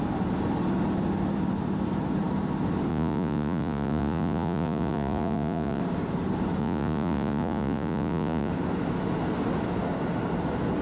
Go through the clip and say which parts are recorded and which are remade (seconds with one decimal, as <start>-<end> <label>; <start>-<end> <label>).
0.0-2.9 recorded; 2.9-5.8 remade; 5.8-6.6 recorded; 6.6-8.5 remade; 8.5-10.8 recorded